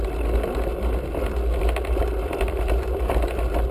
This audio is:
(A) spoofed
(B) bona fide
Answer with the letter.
B